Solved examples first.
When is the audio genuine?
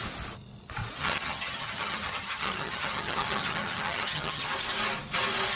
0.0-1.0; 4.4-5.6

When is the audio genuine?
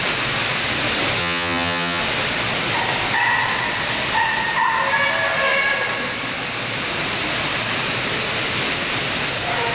0.0-1.2; 2.0-9.7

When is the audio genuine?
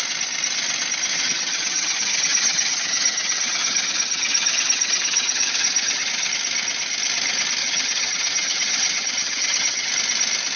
0.0-1.1; 6.3-7.6; 9.9-10.6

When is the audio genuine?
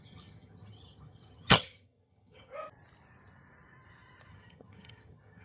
2.5-4.3